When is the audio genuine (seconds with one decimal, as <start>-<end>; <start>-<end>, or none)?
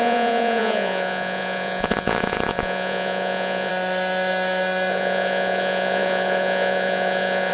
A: 3.7-4.9